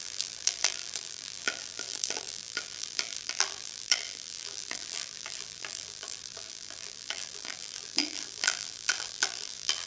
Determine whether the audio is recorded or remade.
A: remade